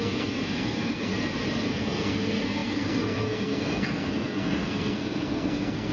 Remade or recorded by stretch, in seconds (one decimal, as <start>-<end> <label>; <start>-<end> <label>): 0.0-1.1 remade; 1.1-1.7 recorded; 1.7-5.9 remade